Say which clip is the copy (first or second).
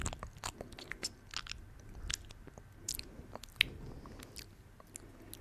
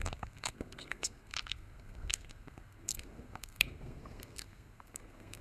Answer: second